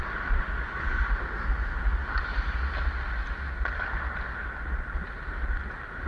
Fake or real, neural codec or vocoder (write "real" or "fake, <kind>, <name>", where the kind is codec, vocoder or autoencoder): real